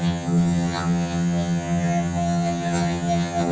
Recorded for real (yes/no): no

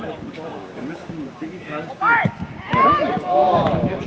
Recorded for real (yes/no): no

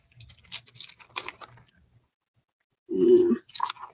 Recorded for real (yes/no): yes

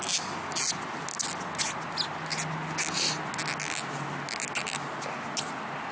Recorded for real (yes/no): yes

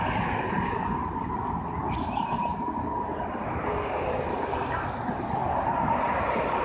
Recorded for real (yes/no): yes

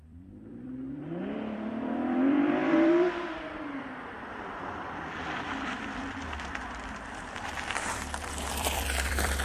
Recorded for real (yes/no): no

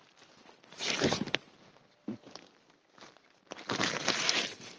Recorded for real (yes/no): yes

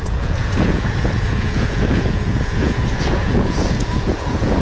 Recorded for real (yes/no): no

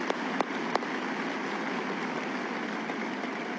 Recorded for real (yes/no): yes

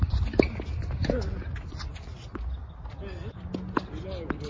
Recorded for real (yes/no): yes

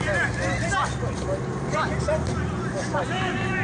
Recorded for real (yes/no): yes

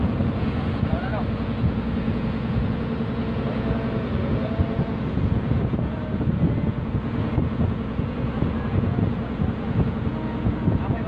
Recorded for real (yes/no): no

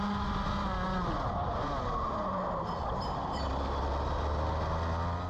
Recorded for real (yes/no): yes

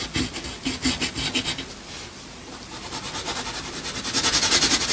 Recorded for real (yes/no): yes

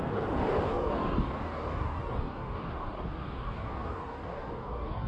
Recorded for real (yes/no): no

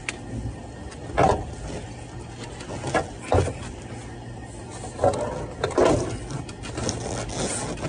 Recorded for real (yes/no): yes